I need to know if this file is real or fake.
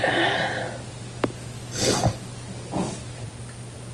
real